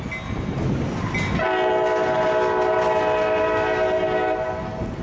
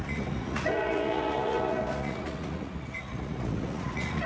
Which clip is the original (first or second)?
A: first